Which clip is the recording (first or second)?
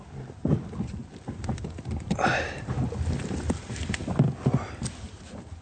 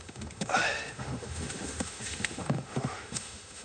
first